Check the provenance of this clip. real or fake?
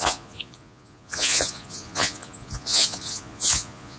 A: fake